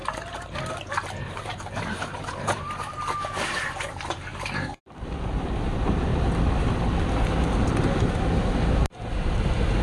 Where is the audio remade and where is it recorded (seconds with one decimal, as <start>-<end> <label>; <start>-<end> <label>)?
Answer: 0.0-1.3 recorded; 1.3-6.1 remade; 6.1-9.8 recorded